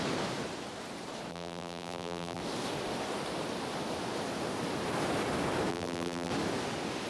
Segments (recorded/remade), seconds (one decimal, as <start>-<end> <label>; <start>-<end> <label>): 0.0-1.3 recorded; 1.3-2.4 remade; 2.4-5.7 recorded; 5.7-6.3 remade; 6.3-7.1 recorded